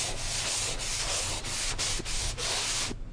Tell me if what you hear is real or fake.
real